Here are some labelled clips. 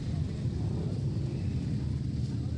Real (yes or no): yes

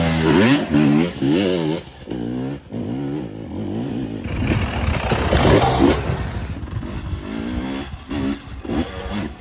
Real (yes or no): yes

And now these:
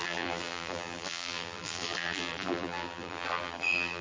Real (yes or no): no